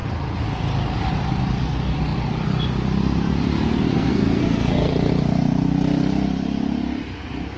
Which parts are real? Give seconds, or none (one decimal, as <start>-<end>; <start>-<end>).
0.0-3.9; 5.1-7.6